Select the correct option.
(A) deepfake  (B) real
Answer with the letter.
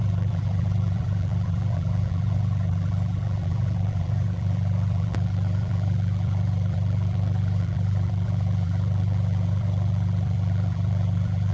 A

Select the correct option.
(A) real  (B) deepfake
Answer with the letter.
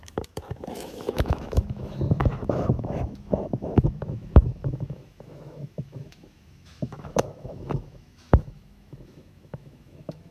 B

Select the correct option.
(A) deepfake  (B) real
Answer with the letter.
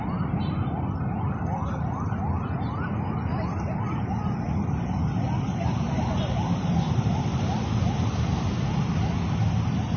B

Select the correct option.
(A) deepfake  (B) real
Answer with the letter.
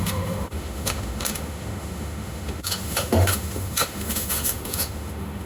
A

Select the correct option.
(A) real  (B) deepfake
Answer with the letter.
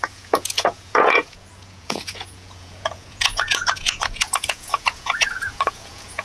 B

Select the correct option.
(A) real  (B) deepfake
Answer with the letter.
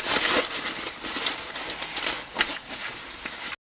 A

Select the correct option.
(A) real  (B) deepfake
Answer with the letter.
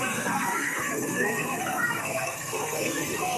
B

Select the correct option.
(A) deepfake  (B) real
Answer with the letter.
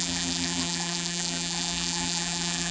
A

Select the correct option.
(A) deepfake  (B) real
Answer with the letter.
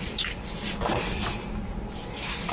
B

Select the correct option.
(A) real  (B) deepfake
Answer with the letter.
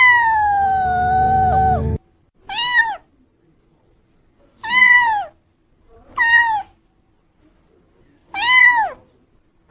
A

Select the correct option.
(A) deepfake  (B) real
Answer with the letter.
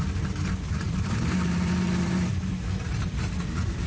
A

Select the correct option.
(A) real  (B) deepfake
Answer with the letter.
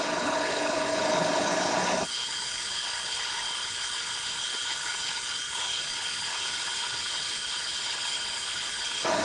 B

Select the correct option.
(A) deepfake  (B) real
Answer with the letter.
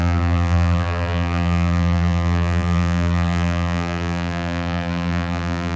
A